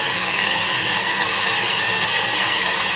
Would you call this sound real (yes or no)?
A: no